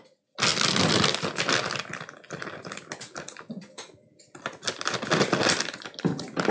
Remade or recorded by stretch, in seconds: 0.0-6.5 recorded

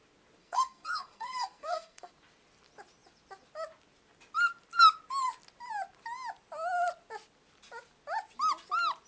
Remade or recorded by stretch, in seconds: 0.0-0.4 recorded; 0.4-2.1 remade; 2.1-9.1 recorded

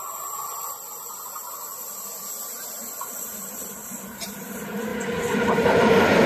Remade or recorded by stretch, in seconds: 0.0-4.9 remade; 4.9-5.5 recorded; 5.5-6.3 remade

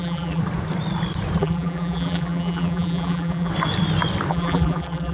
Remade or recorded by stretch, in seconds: 0.0-0.4 remade; 0.4-1.4 recorded; 1.4-3.5 remade; 3.5-4.3 recorded; 4.3-5.1 remade

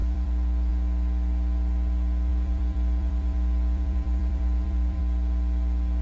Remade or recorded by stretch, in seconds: 0.0-0.7 remade; 0.7-2.3 recorded; 2.3-5.0 remade; 5.0-6.0 recorded

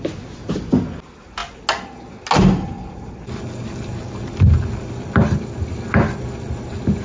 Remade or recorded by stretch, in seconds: 0.0-7.0 recorded

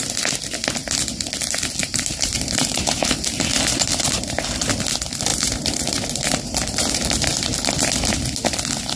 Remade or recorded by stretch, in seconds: 0.0-1.8 recorded; 1.8-3.0 remade; 3.0-3.7 recorded; 3.7-4.7 remade; 4.7-5.3 recorded; 5.3-7.7 remade; 7.7-9.0 recorded

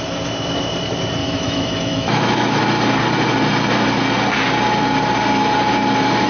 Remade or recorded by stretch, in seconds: 0.0-1.2 recorded; 1.2-2.6 remade; 2.6-6.3 recorded